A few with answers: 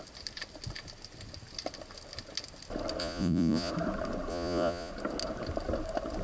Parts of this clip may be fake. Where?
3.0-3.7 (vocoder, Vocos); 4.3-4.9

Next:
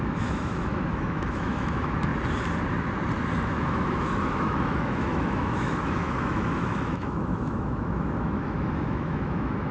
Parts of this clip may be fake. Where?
0.0-2.1 (autoencoder, DAC-VAE); 3.4-9.7